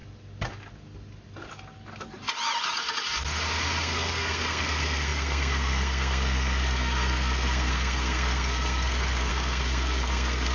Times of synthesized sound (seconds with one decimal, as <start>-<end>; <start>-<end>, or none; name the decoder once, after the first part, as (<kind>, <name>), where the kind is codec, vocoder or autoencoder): 3.8-10.5 (codec, SNAC)